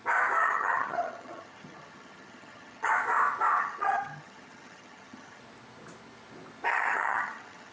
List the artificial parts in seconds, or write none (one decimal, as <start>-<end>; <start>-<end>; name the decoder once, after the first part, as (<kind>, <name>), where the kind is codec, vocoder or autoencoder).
0.4-2.9 (vocoder, HiFi-GAN); 3.6-5.4; 6.7-7.7